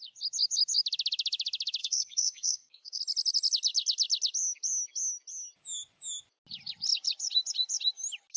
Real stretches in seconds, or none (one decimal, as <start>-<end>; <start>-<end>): 0.0-1.8; 3.0-8.4